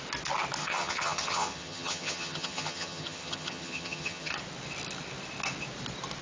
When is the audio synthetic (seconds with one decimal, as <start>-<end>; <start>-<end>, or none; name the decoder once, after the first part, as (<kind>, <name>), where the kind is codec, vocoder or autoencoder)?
0.6-4.3 (vocoder, HiFi-GAN)